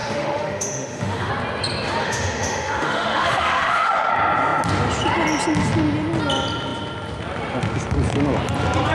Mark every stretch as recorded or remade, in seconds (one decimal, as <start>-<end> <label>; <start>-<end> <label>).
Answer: 0.0-1.3 remade; 1.3-2.0 recorded; 2.0-4.1 remade; 4.1-8.9 recorded